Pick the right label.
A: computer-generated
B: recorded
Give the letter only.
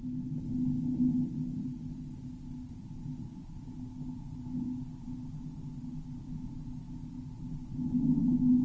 B